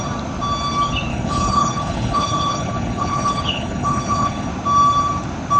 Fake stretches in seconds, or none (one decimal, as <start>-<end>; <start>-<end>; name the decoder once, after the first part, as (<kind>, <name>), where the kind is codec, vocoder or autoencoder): 1.1-4.5 (codec, HILCodec)